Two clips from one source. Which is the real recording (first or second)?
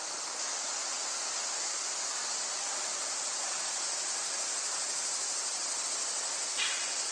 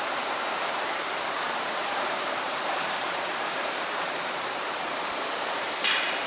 first